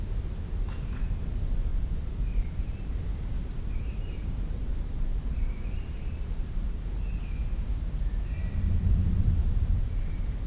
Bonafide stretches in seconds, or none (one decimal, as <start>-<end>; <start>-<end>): 0.0-1.7; 2.9-3.4; 6.8-9.0; 9.8-10.5